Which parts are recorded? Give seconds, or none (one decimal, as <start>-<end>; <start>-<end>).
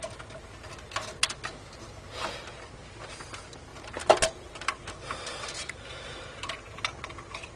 0.0-3.7; 6.2-7.6